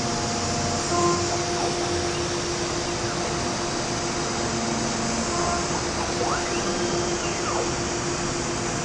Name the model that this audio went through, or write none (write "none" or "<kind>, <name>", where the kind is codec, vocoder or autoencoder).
none